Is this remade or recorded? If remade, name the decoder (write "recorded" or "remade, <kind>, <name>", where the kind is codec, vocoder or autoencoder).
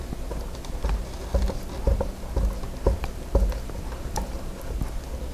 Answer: recorded